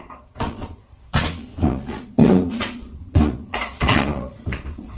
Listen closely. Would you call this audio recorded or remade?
remade